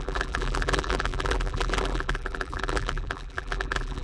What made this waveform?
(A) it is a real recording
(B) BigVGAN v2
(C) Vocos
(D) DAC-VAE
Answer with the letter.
B